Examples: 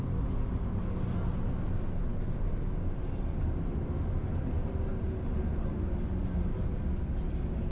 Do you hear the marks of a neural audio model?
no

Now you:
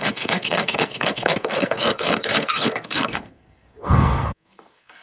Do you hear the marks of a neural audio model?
yes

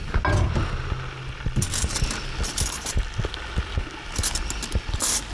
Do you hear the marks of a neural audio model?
no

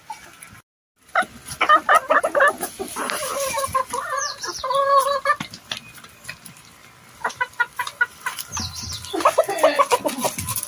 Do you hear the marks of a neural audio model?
no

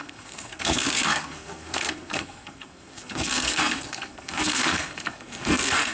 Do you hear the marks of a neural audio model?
yes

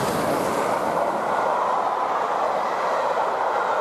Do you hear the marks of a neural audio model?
no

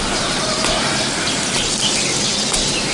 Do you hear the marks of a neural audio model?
no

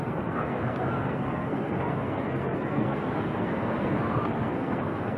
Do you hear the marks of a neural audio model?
yes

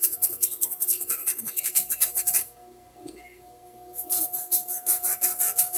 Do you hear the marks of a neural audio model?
yes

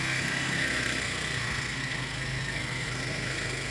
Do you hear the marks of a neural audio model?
yes